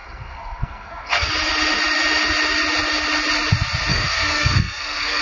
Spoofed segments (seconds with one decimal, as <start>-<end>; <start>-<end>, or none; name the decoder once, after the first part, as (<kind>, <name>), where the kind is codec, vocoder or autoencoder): 0.0-1.3 (codec, SNAC); 3.9-5.2